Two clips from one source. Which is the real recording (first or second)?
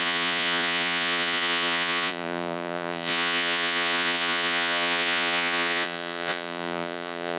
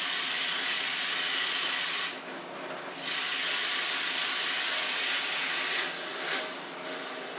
second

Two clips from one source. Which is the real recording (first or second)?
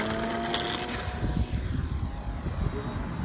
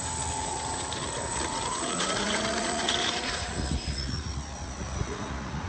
first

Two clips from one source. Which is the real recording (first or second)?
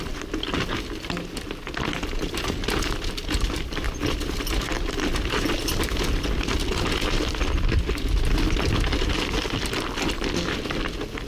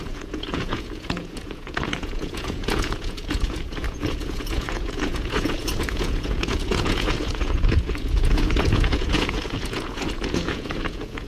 first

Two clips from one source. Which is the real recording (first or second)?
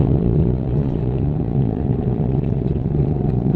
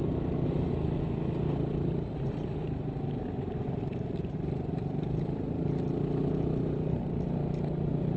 second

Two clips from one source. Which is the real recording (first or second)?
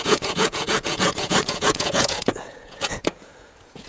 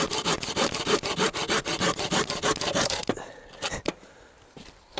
second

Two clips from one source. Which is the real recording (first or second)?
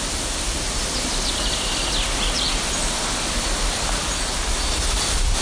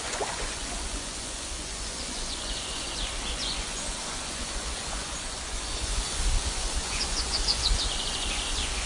first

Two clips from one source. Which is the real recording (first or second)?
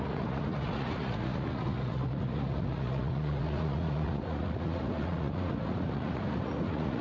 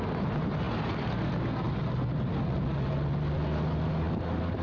second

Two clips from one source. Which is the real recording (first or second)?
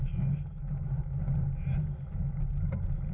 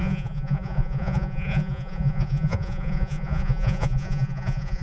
first